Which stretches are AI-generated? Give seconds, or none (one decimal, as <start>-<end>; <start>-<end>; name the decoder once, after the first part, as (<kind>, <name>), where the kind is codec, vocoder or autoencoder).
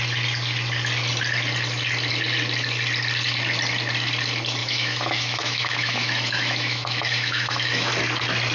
4.6-7.9 (autoencoder, DAC-VAE)